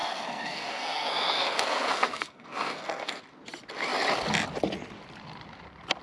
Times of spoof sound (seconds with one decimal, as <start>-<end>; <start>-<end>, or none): 0.0-3.2